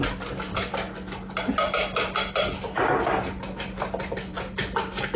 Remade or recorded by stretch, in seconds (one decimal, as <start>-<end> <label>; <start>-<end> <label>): 0.0-5.2 recorded